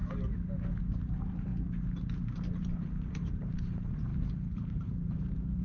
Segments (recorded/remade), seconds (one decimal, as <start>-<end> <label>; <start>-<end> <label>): 0.0-0.8 recorded; 0.8-1.5 remade; 1.5-2.6 recorded; 2.6-5.6 remade